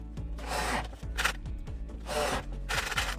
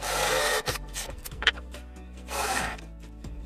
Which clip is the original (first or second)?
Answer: first